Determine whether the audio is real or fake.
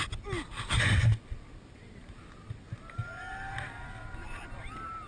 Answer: real